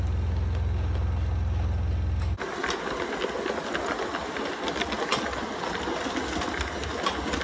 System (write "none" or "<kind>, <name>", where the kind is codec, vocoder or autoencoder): none